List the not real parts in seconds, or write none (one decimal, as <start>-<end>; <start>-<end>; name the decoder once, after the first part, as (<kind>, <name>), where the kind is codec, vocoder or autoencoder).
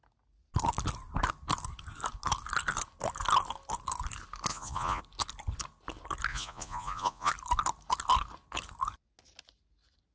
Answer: 4.5-5.0 (vocoder, Vocos); 6.3-7.3